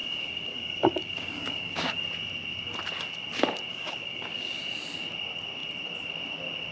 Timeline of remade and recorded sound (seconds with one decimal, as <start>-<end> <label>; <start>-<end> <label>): 0.0-2.0 remade; 2.0-3.7 recorded; 3.7-4.6 remade; 4.6-6.7 recorded